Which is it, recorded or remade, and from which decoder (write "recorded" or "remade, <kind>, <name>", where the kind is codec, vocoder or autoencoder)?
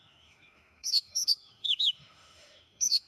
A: remade, autoencoder, DAC-VAE